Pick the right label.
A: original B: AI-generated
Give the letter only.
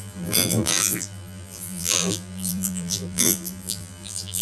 B